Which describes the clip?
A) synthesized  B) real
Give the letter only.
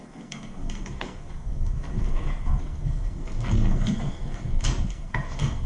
A